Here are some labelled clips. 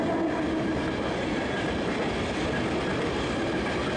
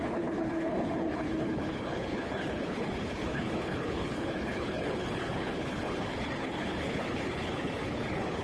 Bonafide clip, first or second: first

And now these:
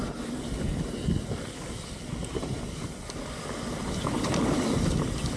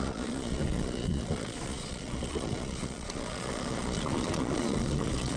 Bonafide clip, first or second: first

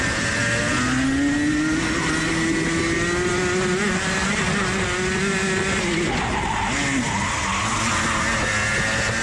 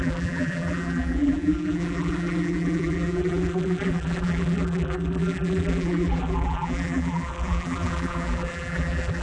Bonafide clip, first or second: first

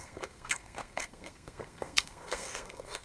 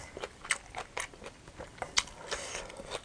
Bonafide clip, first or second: second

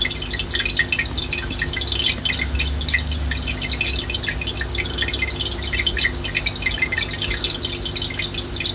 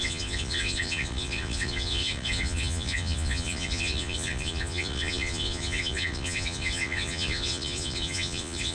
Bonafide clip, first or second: first